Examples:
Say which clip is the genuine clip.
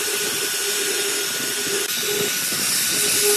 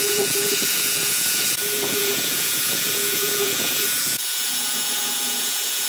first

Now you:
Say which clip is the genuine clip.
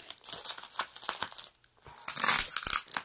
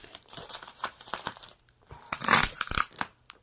first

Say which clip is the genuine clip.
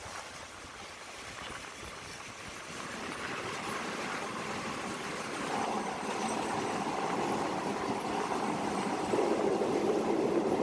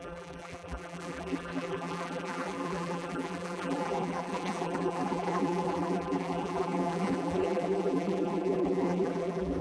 first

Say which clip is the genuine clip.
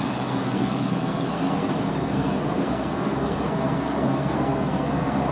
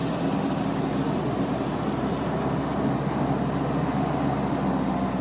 second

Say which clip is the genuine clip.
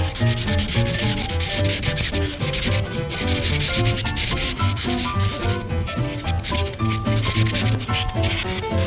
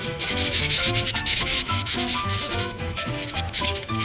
first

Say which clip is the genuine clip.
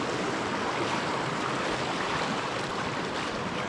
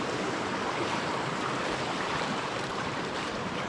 first